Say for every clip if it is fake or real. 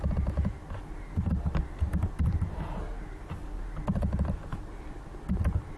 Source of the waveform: real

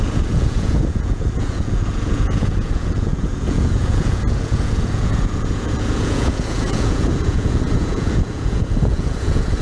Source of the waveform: fake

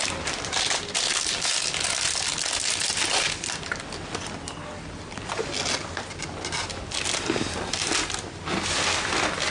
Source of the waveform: real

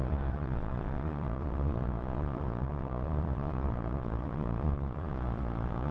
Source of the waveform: fake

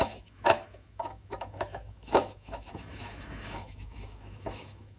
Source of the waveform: fake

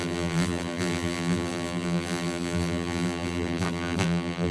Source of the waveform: fake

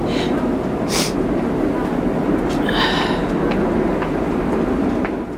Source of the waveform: real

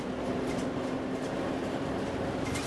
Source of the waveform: real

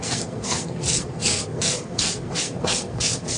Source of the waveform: fake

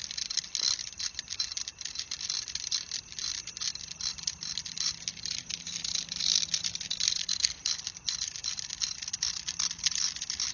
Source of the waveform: real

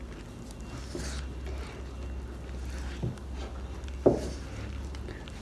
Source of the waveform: real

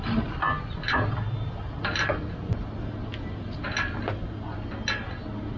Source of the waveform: real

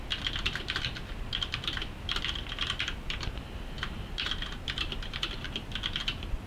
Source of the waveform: fake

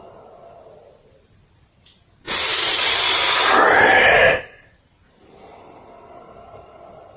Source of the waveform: fake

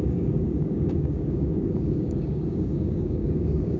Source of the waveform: fake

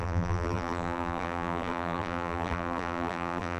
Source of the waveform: fake